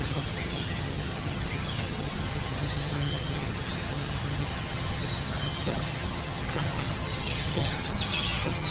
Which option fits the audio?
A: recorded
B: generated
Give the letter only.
B